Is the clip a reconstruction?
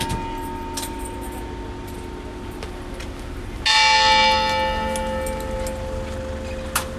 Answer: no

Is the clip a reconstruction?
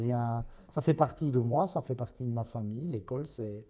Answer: yes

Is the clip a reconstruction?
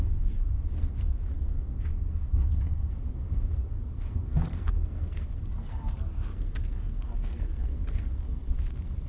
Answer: yes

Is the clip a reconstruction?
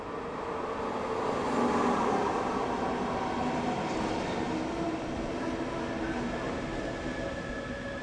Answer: no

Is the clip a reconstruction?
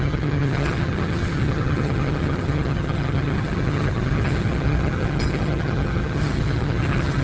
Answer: yes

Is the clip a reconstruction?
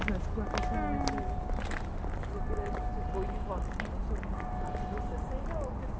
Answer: no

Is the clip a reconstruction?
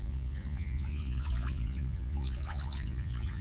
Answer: yes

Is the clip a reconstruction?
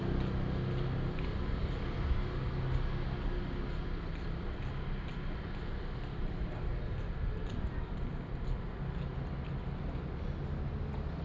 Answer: no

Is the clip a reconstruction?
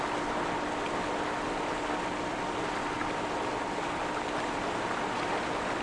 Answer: no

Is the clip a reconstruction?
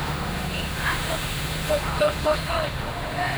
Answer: yes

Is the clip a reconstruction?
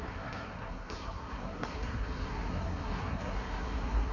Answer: yes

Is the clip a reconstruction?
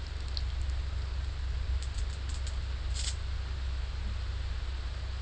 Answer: no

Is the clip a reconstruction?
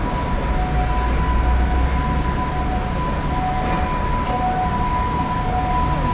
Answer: no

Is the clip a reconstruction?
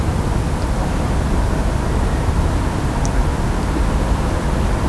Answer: no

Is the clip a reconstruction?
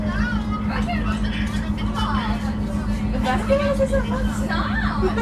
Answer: no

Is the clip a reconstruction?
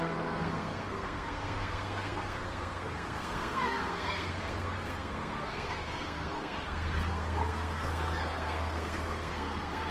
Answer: yes